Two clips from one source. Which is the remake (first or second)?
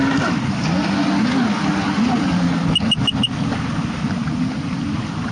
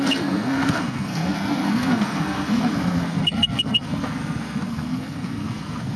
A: second